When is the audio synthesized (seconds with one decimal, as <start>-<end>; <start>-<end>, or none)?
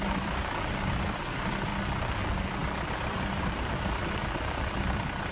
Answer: 0.0-0.4; 0.9-1.7; 2.2-5.3